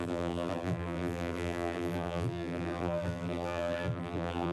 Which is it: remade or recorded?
remade